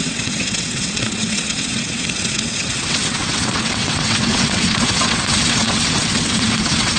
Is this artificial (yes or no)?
yes